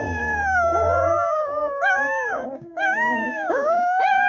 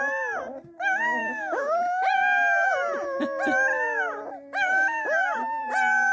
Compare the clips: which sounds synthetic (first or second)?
first